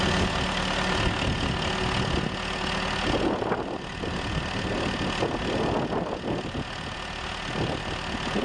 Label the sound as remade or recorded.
recorded